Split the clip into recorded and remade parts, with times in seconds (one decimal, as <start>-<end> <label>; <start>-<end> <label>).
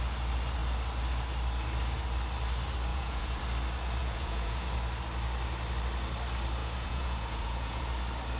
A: 0.0-2.9 recorded; 2.9-3.4 remade; 3.4-4.0 recorded; 4.0-4.6 remade; 4.6-6.6 recorded; 6.6-7.8 remade; 7.8-8.4 recorded